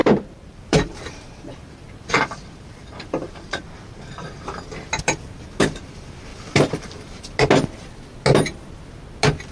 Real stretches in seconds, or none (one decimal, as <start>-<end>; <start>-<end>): 4.6-6.3; 7.3-9.5